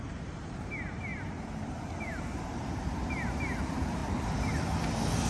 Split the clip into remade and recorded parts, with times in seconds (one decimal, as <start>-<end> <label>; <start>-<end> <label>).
0.0-4.0 remade; 4.0-5.3 recorded